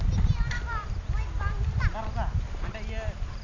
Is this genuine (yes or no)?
yes